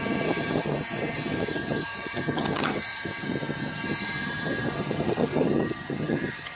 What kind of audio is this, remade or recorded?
remade